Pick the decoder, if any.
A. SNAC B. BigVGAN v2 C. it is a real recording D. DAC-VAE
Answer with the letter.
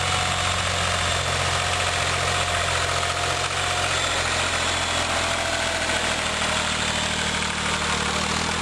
C